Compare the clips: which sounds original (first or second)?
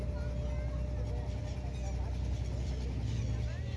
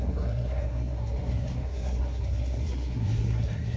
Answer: first